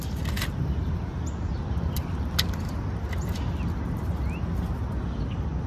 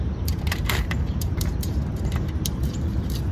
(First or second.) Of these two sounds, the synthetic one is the second